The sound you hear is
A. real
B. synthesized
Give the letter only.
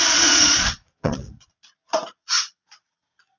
B